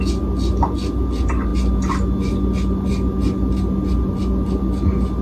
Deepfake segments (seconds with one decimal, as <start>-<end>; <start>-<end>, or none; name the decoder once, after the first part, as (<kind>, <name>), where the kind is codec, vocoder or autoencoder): none